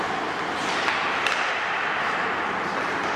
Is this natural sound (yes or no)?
yes